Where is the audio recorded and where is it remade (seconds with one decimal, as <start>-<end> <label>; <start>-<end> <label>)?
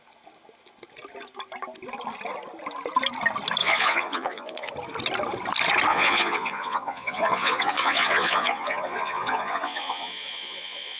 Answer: 0.0-3.6 recorded; 3.6-4.7 remade; 4.7-5.9 recorded; 5.9-11.0 remade